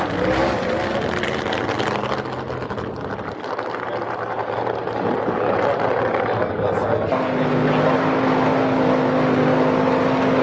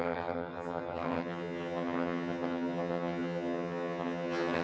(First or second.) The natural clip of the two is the first